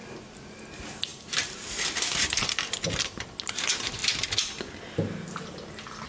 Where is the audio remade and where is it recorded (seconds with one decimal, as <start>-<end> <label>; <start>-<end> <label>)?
0.0-0.6 remade; 0.6-1.1 recorded; 1.1-2.7 remade; 2.7-4.0 recorded; 4.0-4.8 remade; 4.8-6.1 recorded